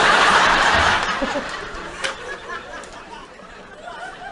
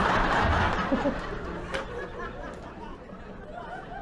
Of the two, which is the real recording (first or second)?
second